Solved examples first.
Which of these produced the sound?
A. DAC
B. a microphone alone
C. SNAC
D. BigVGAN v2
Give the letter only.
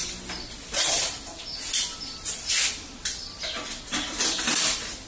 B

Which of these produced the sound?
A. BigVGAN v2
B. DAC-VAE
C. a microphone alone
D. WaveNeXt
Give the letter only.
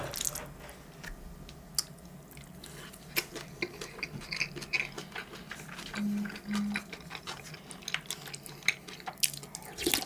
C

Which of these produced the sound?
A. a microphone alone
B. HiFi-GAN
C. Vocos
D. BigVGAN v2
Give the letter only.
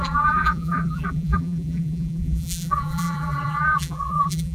D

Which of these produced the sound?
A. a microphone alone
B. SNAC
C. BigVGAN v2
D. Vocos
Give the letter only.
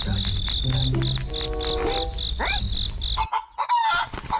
A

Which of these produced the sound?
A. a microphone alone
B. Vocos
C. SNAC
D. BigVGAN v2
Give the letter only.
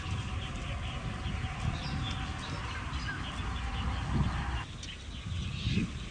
A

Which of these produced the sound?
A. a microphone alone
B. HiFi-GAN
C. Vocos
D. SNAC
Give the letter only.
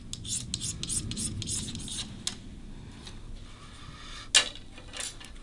A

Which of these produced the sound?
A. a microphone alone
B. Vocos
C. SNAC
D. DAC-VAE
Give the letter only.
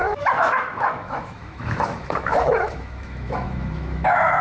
D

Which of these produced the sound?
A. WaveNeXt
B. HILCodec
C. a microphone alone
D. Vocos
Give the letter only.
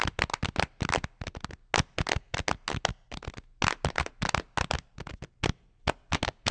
C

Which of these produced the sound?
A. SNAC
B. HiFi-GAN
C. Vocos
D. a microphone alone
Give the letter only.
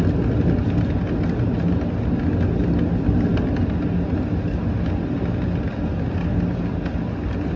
D